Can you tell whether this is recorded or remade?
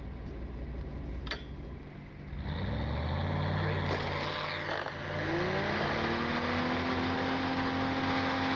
recorded